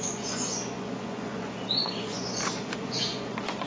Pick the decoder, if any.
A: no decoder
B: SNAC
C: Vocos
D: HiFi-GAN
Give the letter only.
C